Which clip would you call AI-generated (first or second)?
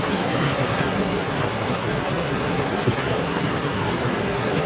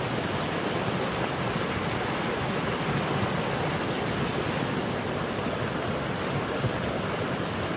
first